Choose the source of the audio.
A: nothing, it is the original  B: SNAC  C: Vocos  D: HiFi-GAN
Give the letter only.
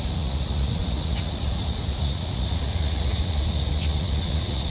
C